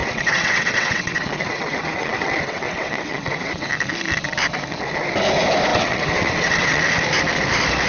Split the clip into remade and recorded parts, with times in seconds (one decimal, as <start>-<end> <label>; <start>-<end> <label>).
0.0-3.7 remade; 3.7-5.7 recorded; 5.7-6.8 remade; 6.8-7.9 recorded